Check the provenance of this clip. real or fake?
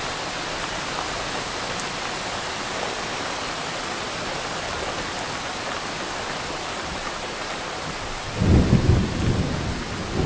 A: real